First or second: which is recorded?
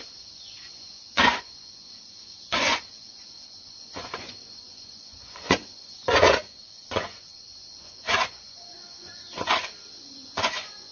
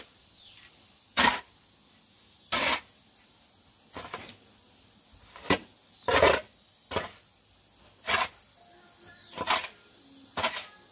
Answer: second